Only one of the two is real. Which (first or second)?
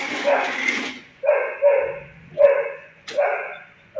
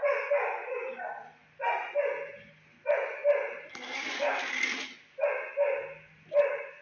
second